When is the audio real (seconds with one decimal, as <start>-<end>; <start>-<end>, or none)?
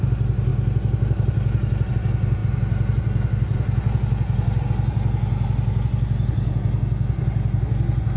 0.0-8.2